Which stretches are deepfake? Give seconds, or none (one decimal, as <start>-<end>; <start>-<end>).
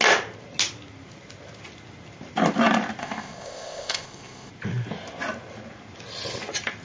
3.0-4.5